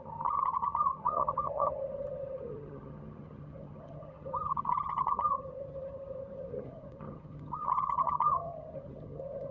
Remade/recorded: remade